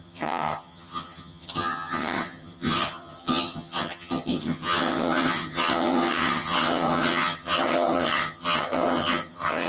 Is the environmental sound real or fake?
fake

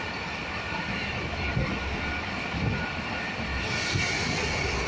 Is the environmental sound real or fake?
real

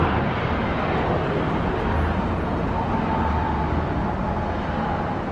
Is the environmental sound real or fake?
real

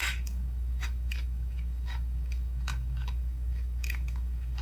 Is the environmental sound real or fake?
fake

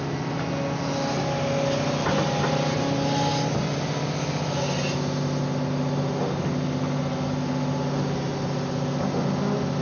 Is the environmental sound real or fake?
real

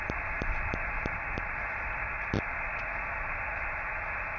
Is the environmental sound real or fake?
real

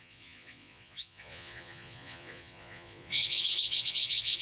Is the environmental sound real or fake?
fake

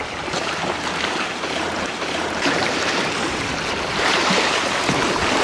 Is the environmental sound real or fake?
fake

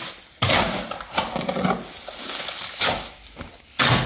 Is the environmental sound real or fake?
real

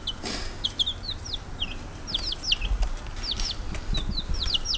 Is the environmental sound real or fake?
real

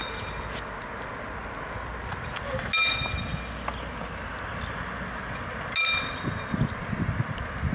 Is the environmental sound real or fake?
real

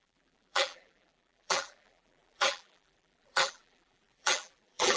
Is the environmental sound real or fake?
fake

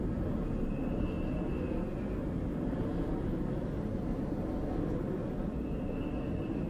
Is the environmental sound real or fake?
real